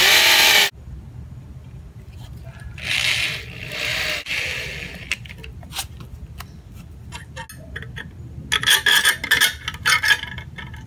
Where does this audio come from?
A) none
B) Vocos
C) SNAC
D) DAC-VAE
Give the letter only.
A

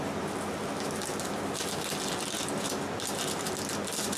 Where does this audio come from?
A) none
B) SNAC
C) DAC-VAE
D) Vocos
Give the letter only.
A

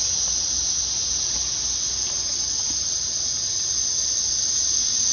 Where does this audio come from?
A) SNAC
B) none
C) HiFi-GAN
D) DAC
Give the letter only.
B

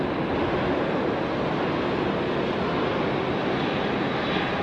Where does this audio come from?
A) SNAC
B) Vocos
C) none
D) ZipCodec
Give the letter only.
C